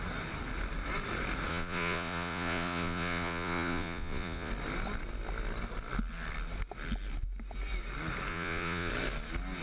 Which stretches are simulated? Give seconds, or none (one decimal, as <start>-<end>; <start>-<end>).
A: 1.5-4.5; 8.3-8.9